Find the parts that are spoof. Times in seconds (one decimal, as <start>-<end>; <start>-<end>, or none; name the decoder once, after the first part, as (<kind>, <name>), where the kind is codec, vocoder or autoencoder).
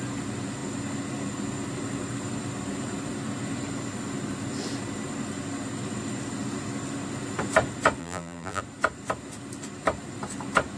8.0-8.6 (vocoder, BigVGAN v2)